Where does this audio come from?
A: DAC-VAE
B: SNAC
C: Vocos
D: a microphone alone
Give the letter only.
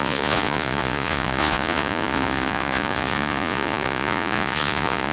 C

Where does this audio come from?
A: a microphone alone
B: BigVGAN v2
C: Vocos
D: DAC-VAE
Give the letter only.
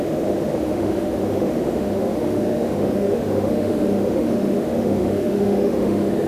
D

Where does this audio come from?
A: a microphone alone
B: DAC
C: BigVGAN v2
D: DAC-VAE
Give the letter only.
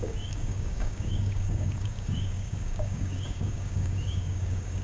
B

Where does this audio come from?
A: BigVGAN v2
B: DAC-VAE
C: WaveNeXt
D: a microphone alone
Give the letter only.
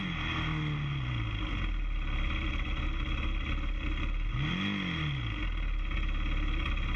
D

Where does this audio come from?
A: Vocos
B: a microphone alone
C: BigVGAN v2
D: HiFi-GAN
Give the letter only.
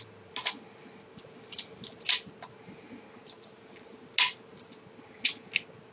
B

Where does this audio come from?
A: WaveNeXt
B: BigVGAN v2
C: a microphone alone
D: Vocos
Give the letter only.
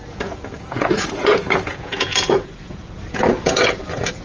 D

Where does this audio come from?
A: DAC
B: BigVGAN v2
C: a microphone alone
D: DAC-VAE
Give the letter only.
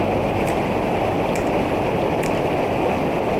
C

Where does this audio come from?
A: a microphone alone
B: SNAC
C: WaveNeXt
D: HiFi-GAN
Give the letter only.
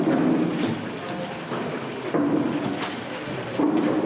A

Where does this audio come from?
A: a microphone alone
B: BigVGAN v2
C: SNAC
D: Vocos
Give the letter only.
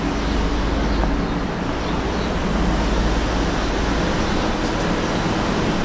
A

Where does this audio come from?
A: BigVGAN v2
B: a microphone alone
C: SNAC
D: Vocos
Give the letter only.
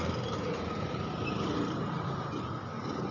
B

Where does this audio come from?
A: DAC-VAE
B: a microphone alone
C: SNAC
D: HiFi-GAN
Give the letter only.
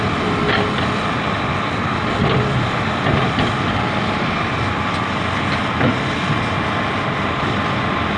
B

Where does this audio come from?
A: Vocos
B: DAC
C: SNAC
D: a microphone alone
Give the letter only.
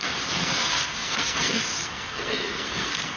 C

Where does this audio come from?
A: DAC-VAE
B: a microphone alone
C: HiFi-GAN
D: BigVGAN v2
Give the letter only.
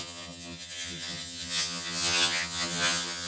C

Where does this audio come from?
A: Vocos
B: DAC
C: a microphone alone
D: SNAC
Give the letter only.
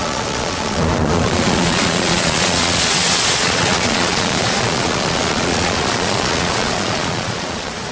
A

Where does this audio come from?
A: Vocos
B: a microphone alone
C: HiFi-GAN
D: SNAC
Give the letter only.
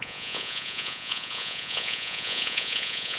A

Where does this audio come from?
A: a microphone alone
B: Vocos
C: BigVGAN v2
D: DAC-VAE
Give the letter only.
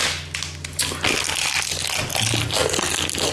A